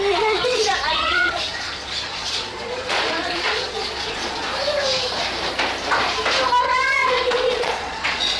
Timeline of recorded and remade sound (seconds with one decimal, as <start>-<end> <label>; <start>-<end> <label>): 0.0-4.5 remade; 4.5-6.6 recorded; 6.6-8.4 remade